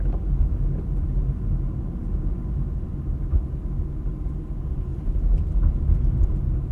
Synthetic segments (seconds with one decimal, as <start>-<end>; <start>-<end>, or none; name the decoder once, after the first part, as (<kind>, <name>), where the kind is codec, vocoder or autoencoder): 4.9-6.7 (vocoder, BigVGAN v2)